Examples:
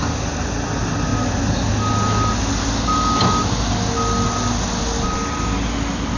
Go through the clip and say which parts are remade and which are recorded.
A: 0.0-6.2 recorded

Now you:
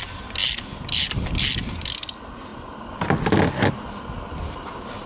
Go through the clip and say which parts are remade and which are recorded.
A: 0.0-5.1 recorded

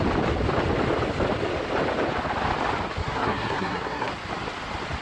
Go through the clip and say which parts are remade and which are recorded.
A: 0.0-3.0 recorded; 3.0-4.1 remade; 4.1-5.0 recorded

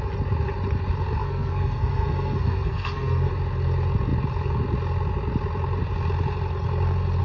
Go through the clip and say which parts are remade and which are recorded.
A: 0.0-1.2 recorded; 1.2-3.3 remade; 3.3-7.2 recorded

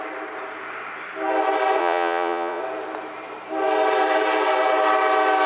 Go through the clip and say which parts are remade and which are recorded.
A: 0.0-1.8 recorded; 1.8-2.6 remade; 2.6-5.5 recorded

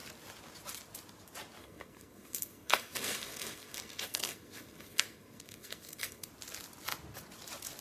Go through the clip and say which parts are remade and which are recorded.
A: 0.0-1.6 recorded; 1.6-6.3 remade; 6.3-7.8 recorded